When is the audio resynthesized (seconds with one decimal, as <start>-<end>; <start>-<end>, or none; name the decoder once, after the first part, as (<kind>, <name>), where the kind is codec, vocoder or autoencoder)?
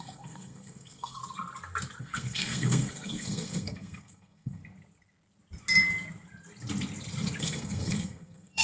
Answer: 0.0-1.2 (codec, SNAC); 2.0-4.6; 7.4-8.6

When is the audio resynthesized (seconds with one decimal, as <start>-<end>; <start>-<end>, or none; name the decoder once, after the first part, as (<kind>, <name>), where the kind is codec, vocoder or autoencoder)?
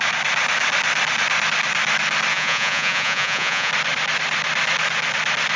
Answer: 2.3-3.7 (vocoder, Vocos)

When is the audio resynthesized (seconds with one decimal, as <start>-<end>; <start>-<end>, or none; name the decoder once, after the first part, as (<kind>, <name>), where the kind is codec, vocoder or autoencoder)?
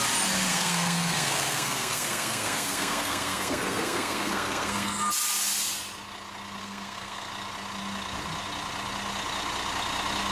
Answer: 0.5-5.1 (codec, SNAC); 6.6-7.3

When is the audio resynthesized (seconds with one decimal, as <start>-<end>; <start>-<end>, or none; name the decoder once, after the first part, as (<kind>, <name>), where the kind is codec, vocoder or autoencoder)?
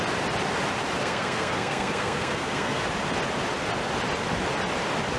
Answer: 1.0-2.8 (codec, SNAC)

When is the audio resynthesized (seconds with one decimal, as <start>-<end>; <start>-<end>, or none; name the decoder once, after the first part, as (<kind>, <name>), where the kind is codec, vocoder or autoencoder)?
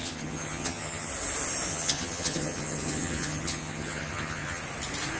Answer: 0.0-1.1 (vocoder, HiFi-GAN); 1.7-4.6